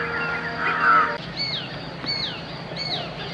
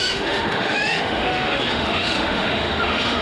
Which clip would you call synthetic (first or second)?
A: second